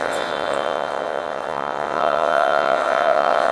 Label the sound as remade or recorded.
remade